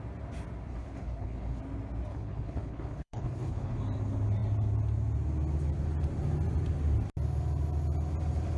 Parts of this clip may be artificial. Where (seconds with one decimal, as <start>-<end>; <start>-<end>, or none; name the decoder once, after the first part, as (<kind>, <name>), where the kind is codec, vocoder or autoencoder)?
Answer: 0.7-1.6 (codec, HILCodec); 2.1-3.8